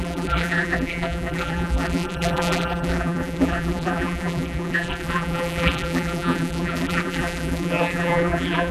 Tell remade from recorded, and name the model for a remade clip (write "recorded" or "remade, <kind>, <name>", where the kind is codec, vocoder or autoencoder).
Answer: remade, vocoder, BigVGAN v2